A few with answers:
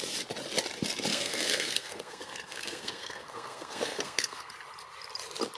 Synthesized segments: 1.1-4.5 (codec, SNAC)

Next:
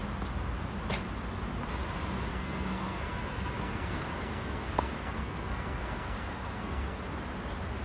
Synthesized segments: 2.3-7.0 (codec, SNAC)

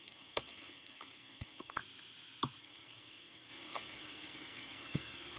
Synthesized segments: 0.0-1.8 (codec, SNAC); 2.6-5.4

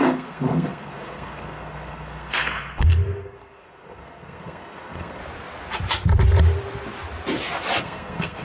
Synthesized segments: 0.0-5.2 (codec, SNAC); 7.8-8.4

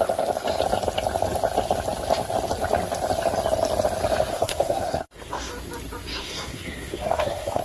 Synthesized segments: 4.3-5.5 (codec, SNAC); 6.1-7.6

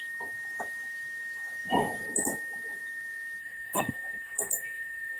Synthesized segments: 3.4-5.2 (codec, SNAC)

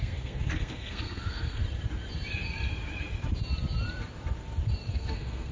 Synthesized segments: 0.0-1.6 (codec, SNAC); 4.9-5.5